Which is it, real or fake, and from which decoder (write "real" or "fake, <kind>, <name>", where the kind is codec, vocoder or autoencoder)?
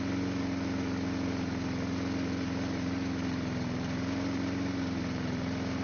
real